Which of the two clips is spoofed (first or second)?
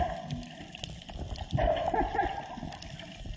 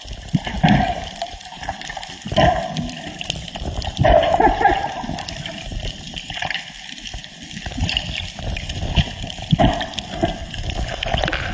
second